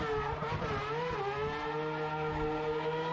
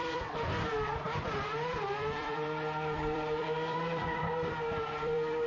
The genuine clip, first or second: first